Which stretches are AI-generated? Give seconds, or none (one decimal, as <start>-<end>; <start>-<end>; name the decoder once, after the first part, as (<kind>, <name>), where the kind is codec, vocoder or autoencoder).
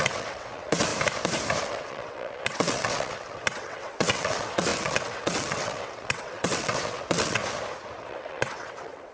0.0-0.9 (vocoder, WaveNeXt); 1.6-7.4; 8.0-9.1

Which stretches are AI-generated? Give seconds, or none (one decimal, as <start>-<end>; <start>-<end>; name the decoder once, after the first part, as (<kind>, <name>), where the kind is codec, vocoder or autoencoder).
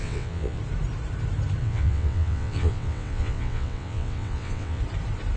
0.0-0.6 (vocoder, WaveNeXt); 1.6-4.8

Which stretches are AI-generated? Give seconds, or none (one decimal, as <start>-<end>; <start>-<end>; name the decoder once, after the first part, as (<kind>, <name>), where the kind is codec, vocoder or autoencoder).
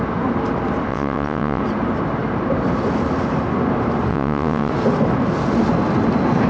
0.9-1.6 (vocoder, WaveNeXt); 4.1-4.7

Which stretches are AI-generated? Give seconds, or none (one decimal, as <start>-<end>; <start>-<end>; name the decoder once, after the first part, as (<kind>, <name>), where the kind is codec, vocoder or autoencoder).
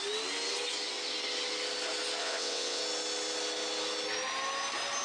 2.2-2.8 (vocoder, WaveNeXt)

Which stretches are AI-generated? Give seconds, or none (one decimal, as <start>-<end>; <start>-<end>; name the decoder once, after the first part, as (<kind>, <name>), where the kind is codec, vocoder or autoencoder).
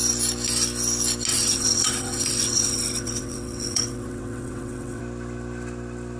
1.3-5.0 (vocoder, WaveNeXt)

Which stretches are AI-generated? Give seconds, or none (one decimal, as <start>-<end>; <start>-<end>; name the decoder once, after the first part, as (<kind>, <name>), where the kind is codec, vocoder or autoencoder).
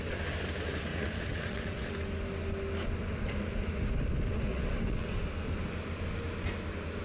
0.9-1.9 (vocoder, WaveNeXt); 4.5-5.2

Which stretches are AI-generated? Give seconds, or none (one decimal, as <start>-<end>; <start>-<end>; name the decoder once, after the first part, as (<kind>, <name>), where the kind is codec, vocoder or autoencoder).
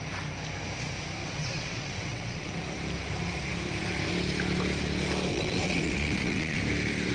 1.2-2.5 (vocoder, WaveNeXt); 5.3-6.6